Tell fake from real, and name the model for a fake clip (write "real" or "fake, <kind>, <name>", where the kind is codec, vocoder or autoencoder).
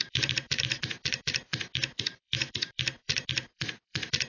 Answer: fake, vocoder, BigVGAN v2